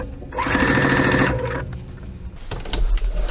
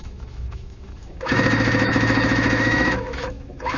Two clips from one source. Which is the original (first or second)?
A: first